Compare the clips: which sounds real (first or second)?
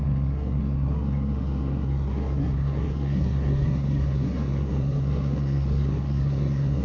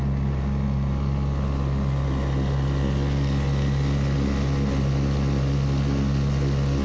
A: second